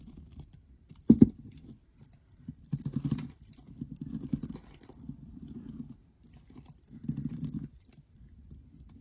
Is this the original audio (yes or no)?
no